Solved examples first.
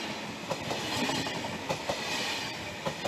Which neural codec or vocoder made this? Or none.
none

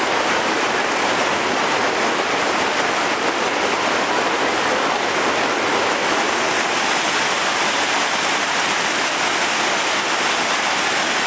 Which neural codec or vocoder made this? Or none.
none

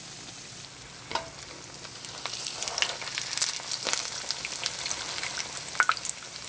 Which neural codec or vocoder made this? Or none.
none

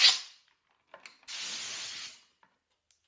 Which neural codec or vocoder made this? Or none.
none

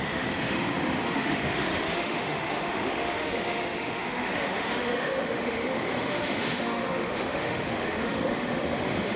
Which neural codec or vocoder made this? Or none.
autoencoder, DAC-VAE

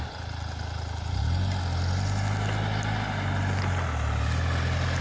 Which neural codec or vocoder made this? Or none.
none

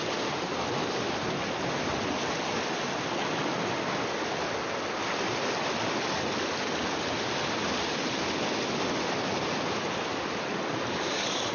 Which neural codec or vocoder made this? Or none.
none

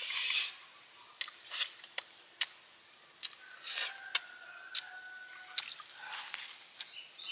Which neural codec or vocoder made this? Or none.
none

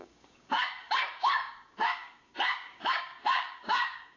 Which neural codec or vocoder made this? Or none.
codec, DAC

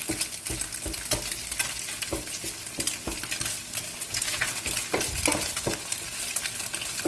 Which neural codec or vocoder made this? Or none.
none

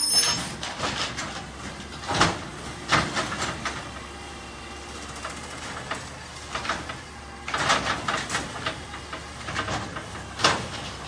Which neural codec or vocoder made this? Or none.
none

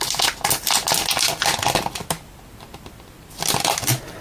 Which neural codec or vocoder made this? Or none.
none